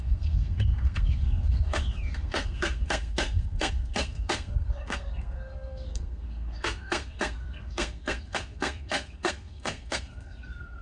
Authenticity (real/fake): fake